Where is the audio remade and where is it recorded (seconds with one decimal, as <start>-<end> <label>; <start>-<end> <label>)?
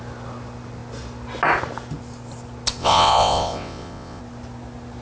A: 0.0-2.8 recorded; 2.8-4.2 remade; 4.2-5.0 recorded